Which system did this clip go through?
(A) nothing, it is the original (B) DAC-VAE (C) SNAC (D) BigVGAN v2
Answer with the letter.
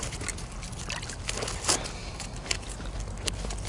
A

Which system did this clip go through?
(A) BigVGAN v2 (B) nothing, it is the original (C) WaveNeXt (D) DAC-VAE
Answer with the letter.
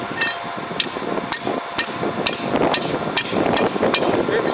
B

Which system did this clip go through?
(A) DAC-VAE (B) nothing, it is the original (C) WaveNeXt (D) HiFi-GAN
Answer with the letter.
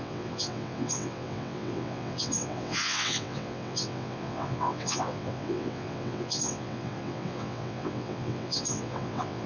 C